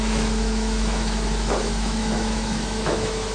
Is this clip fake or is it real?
fake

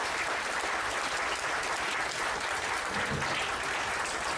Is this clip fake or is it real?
real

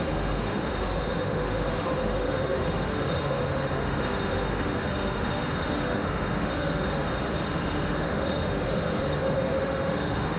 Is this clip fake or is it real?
fake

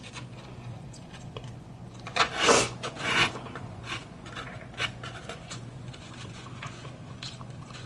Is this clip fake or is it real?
fake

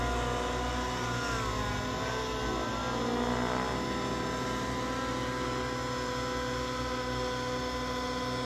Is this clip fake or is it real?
real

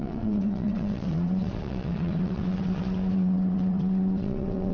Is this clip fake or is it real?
fake